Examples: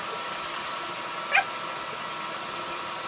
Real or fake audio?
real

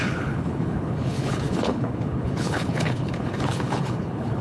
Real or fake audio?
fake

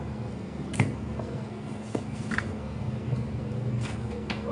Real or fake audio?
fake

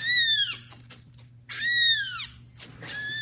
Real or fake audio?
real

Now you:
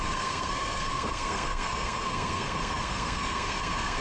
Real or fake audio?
fake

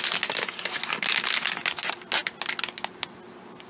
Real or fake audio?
real